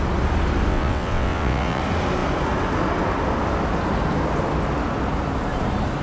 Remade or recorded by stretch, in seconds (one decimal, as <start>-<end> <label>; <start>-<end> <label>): 0.0-0.7 recorded; 0.7-1.8 remade; 1.8-6.0 recorded